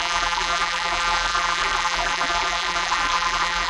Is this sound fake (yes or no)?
yes